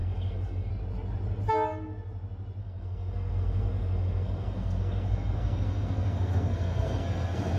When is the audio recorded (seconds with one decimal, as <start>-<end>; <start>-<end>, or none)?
0.7-2.6

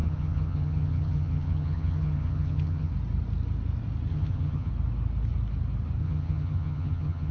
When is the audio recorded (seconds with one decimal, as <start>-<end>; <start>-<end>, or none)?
2.9-4.1; 4.7-6.0